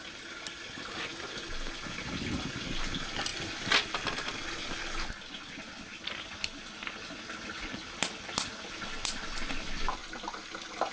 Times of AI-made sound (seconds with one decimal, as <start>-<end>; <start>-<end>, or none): none